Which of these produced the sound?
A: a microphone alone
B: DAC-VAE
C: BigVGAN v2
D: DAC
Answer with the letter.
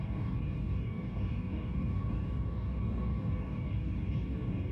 D